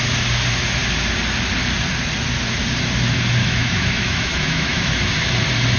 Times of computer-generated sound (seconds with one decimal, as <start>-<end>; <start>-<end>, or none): 3.4-5.0